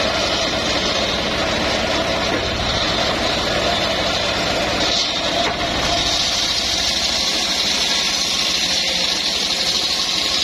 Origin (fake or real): real